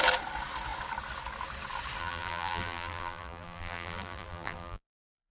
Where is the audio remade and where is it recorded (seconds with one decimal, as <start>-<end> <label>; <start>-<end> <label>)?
0.0-2.0 recorded; 2.0-5.3 remade